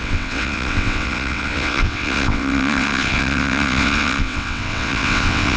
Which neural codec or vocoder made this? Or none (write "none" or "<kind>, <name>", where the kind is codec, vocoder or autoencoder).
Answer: vocoder, WaveNeXt